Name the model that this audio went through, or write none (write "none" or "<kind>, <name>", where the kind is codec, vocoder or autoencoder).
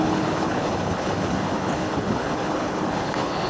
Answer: codec, HILCodec